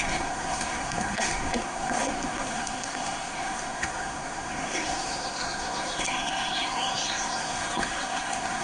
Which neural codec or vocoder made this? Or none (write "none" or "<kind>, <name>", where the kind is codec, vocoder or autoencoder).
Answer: codec, SNAC